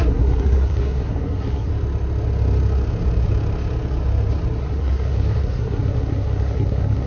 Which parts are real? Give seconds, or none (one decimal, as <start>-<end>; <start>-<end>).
1.7-4.6